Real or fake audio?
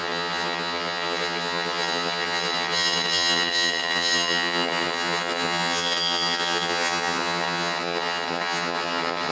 fake